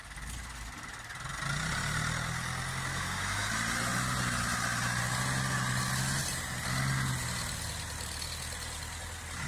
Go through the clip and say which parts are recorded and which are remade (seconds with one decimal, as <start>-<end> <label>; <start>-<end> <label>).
0.0-2.9 recorded; 2.9-3.5 remade; 3.5-9.5 recorded